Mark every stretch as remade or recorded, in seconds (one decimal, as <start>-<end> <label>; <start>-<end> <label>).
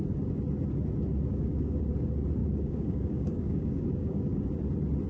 0.0-1.3 recorded; 1.3-1.8 remade; 1.8-2.4 recorded; 2.4-4.4 remade; 4.4-5.1 recorded